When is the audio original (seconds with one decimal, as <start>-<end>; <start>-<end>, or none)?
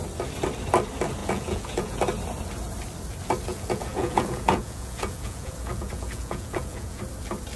0.0-1.2; 2.0-3.5; 7.0-7.6